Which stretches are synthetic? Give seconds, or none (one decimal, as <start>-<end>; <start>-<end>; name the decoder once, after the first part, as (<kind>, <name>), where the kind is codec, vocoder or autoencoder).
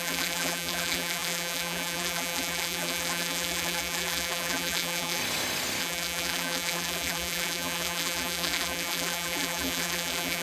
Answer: 0.0-5.2 (vocoder, BigVGAN v2); 5.8-10.4